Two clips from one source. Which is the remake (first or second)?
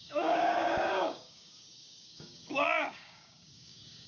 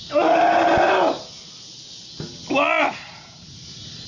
first